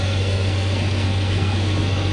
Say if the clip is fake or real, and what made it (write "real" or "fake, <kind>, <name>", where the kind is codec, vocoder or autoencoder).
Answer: fake, codec, SNAC